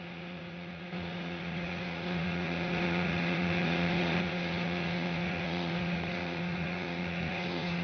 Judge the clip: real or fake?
fake